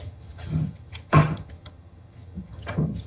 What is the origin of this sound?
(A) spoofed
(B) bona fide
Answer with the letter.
A